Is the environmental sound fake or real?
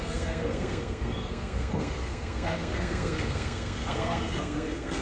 fake